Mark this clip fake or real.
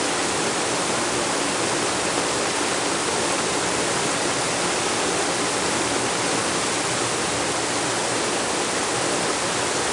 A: real